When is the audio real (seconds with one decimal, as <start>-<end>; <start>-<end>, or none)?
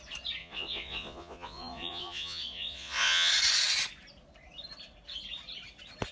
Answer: 0.0-0.4; 3.3-6.1